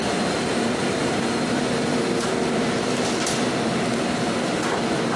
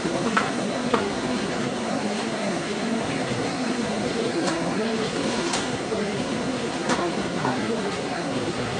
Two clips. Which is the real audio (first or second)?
first